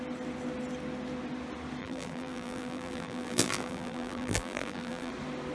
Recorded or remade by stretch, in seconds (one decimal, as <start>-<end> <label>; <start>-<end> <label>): 0.0-1.8 recorded; 1.8-5.1 remade; 5.1-5.5 recorded